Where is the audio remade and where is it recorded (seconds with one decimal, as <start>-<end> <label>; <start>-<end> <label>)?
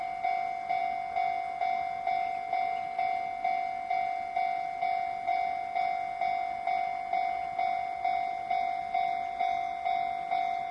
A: 0.0-10.7 recorded